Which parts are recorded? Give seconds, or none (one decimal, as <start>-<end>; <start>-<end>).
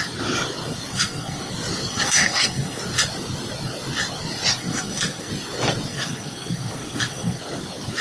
0.0-0.9; 1.5-1.9; 2.8-4.6; 5.3-5.9; 7.4-8.0